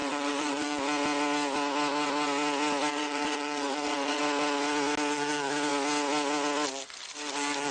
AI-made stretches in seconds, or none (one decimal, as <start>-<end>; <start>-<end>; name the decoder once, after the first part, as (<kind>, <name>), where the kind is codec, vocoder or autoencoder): 0.0-0.8 (vocoder, WaveNeXt); 2.9-4.2